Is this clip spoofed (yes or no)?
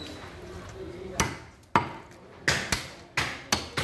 no